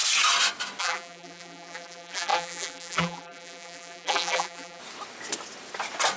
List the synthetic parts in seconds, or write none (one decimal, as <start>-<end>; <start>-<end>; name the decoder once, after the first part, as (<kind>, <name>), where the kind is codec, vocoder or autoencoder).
0.8-4.8 (vocoder, BigVGAN v2)